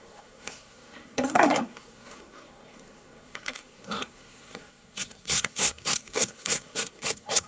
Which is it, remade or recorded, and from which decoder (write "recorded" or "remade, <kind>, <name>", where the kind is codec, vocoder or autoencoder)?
remade, codec, SNAC